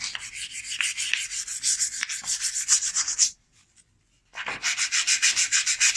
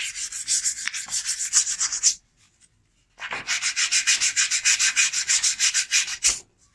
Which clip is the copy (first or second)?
first